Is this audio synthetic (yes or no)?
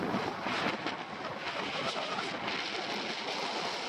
no